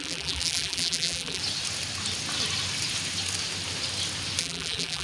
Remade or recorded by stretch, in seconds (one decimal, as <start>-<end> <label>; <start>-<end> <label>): 0.0-1.4 remade; 1.4-4.4 recorded; 4.4-5.0 remade